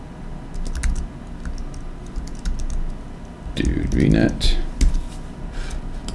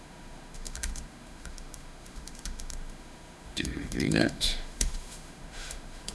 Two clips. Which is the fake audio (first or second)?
second